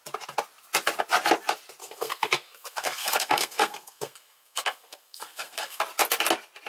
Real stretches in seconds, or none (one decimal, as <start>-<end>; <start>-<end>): 0.0-1.8; 5.8-6.7